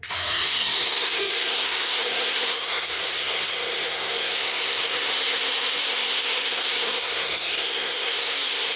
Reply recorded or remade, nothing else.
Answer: remade